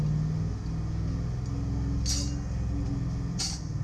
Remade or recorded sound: recorded